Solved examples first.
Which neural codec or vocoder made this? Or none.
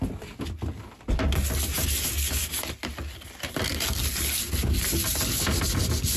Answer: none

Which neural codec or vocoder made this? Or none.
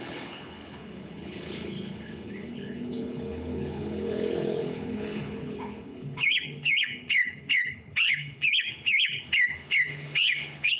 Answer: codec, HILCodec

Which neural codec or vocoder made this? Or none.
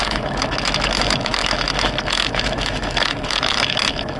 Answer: autoencoder, DAC-VAE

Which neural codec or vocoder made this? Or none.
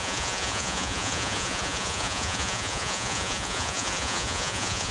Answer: vocoder, Vocos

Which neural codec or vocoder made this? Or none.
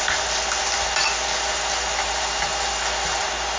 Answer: none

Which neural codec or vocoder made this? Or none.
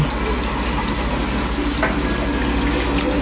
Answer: none